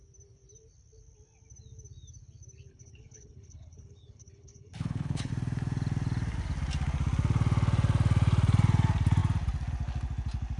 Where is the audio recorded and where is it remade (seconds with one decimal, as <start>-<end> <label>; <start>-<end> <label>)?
0.0-2.7 recorded; 2.7-5.3 remade; 5.3-10.6 recorded